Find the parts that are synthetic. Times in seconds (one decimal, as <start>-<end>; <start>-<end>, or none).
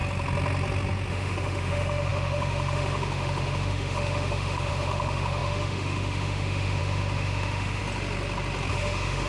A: 1.1-7.8; 8.7-9.3